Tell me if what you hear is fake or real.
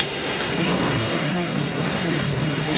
fake